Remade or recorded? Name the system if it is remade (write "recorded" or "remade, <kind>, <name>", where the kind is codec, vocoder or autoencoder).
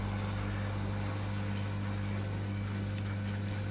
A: recorded